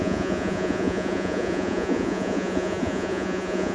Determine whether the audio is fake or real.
fake